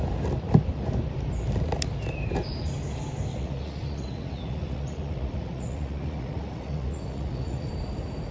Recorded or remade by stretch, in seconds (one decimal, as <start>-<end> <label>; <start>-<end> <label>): 0.0-3.3 recorded; 3.3-7.7 remade; 7.7-8.3 recorded